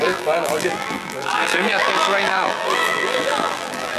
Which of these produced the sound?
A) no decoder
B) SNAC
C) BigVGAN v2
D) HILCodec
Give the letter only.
C